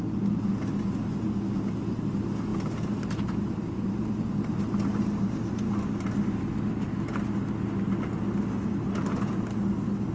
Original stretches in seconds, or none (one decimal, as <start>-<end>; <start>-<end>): 0.0-2.5; 4.6-10.1